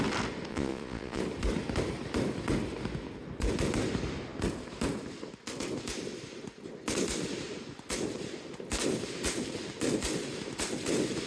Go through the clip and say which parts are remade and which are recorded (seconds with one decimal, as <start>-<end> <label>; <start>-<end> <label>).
0.0-0.5 recorded; 0.5-1.2 remade; 1.2-11.3 recorded